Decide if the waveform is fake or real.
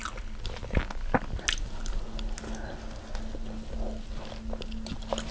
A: real